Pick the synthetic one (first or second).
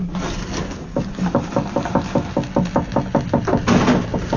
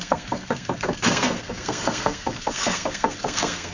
second